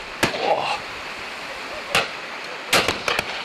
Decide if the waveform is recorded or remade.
recorded